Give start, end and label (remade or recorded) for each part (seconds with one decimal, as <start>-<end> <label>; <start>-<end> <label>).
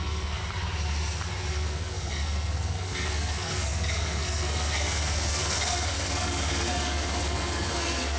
0.0-0.4 remade; 0.4-1.5 recorded; 1.5-8.2 remade